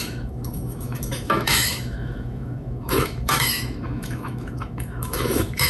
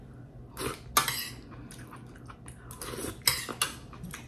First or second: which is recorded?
second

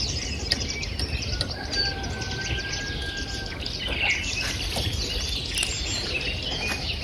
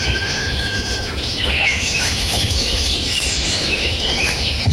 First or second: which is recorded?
first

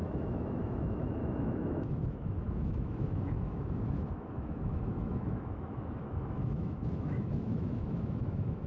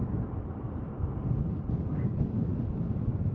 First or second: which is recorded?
second